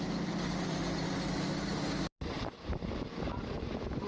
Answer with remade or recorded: recorded